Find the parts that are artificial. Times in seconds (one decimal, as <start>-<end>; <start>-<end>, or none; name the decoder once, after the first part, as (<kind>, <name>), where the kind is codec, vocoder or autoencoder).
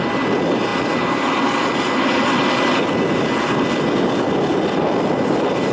none